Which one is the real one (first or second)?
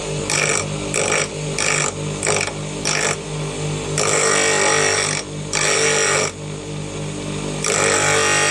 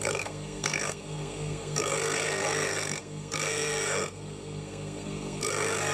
first